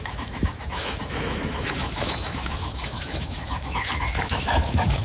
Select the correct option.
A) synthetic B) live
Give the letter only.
A